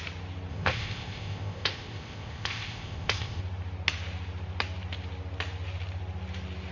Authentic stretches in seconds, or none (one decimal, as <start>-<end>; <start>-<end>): 0.0-0.5; 3.4-6.7